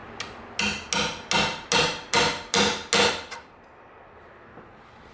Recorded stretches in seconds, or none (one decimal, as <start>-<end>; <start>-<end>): 0.0-5.1